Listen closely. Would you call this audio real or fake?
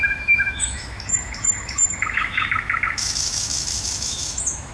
fake